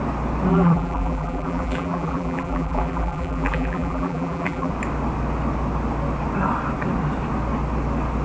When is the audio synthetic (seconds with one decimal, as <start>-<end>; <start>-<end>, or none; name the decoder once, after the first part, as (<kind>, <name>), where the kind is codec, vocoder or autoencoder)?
0.5-4.7 (vocoder, BigVGAN v2)